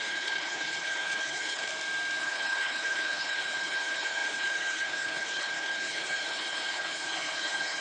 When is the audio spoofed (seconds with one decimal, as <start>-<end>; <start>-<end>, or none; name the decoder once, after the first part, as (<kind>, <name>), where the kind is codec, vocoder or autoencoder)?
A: 0.0-1.7 (codec, HILCodec); 2.2-7.8